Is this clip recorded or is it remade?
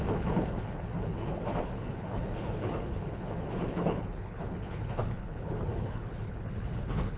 remade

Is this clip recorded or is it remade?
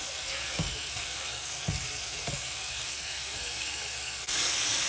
remade